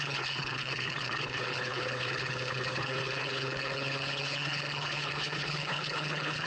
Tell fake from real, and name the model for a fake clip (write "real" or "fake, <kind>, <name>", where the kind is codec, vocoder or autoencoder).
fake, codec, HILCodec